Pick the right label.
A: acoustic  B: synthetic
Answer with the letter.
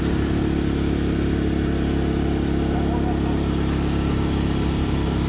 A